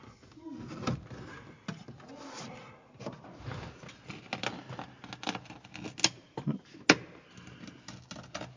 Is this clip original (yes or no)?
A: yes